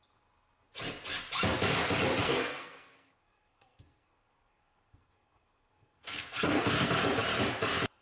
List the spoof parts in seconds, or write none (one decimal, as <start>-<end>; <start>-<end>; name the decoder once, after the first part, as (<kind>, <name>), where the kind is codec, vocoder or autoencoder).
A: 2.2-6.9 (codec, SNAC)